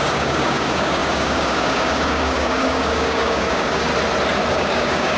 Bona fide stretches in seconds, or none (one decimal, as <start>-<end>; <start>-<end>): 3.9-4.5